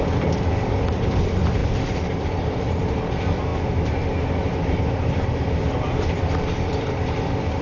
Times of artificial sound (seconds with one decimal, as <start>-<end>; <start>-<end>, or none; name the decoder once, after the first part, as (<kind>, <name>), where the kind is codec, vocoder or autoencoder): 0.0-3.5 (vocoder, BigVGAN v2); 5.8-7.6